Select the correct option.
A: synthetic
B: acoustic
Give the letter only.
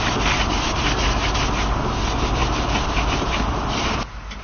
B